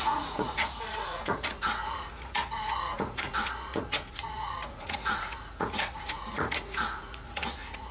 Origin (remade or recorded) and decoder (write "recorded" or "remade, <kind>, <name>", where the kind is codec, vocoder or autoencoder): remade, vocoder, Vocos